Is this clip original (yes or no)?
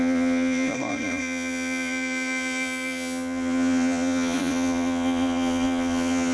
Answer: no